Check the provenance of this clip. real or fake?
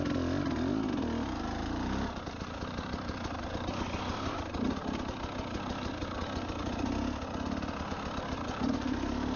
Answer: real